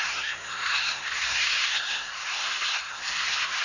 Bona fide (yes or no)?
no